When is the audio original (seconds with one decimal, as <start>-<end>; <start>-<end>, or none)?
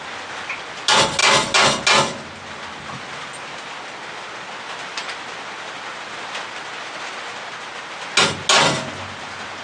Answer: 0.0-9.6